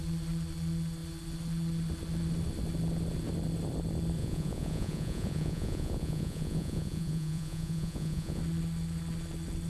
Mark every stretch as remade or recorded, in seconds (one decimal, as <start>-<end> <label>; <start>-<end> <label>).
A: 0.0-4.2 recorded; 4.2-8.4 remade; 8.4-9.7 recorded